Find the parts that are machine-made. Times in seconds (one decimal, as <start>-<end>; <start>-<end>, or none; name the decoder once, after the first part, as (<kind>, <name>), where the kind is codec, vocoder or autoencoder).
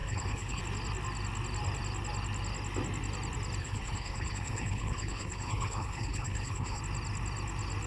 0.0-0.6 (codec, HILCodec); 3.6-6.8